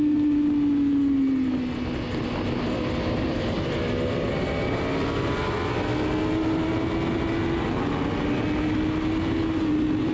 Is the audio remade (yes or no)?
no